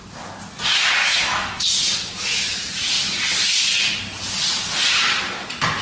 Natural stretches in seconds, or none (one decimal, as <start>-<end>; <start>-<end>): 0.0-1.0; 1.6-5.8